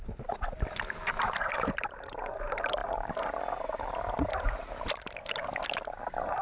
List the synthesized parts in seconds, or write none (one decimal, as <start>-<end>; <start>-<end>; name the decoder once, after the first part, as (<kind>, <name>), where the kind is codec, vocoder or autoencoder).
none